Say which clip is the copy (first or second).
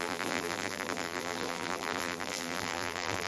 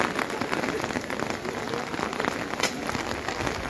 first